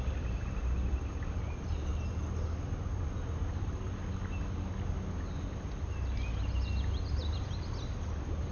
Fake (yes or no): no